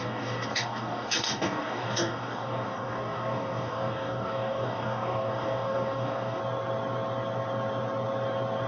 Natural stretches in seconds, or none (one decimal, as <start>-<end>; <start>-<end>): 6.4-8.7

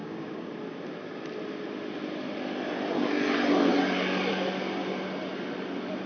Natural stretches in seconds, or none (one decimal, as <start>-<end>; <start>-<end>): 0.5-6.1